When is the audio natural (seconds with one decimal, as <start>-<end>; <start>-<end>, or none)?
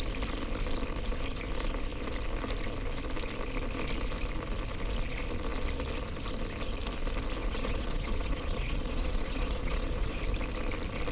0.0-7.4; 10.2-11.1